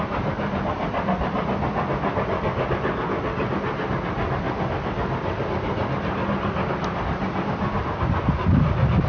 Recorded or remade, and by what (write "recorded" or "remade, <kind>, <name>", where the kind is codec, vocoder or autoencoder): recorded